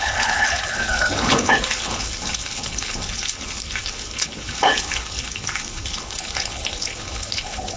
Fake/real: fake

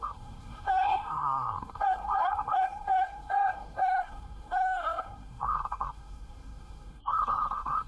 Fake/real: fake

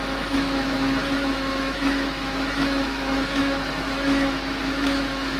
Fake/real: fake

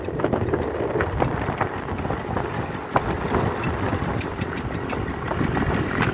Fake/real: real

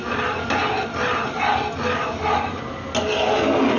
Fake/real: real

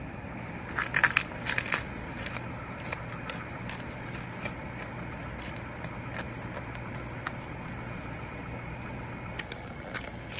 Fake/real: real